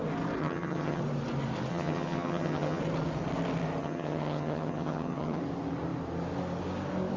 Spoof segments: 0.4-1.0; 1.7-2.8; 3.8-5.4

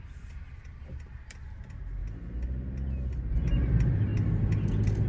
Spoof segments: 0.0-2.0; 3.6-4.1